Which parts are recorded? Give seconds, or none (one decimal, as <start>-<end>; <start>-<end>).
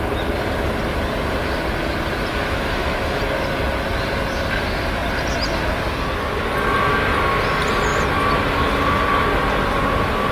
0.0-2.3; 3.2-10.3